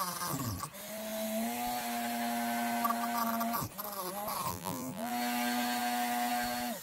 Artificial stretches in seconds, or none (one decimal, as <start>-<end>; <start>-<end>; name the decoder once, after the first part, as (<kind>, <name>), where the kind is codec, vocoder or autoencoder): 4.5-5.1 (vocoder, BigVGAN v2)